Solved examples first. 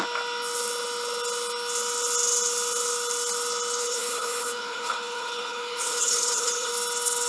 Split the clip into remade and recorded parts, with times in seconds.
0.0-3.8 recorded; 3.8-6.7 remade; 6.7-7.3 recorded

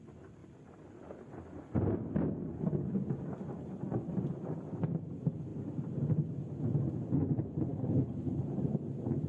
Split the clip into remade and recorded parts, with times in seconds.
0.0-7.7 recorded; 7.7-8.4 remade; 8.4-9.3 recorded

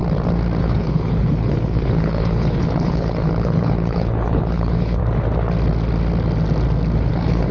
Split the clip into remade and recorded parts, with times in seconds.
0.0-0.6 recorded; 0.6-5.0 remade; 5.0-7.1 recorded; 7.1-7.5 remade

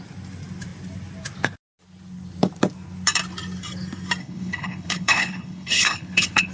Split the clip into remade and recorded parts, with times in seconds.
0.0-4.2 recorded; 4.2-6.5 remade

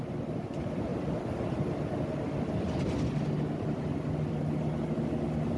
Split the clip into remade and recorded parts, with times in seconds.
0.0-5.6 recorded

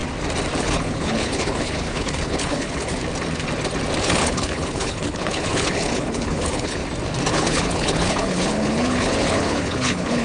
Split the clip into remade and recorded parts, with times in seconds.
0.0-0.6 recorded; 0.6-3.0 remade; 3.0-4.0 recorded; 4.0-6.8 remade; 6.8-7.3 recorded; 7.3-10.2 remade

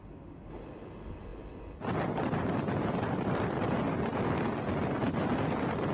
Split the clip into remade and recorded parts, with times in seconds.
0.0-5.9 recorded